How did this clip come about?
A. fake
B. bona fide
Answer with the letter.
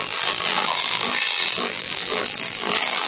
A